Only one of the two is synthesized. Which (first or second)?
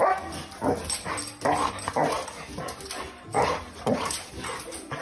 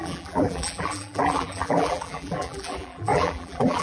second